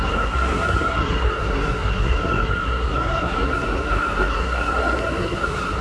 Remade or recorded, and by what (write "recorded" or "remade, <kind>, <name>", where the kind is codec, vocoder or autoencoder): remade, codec, SNAC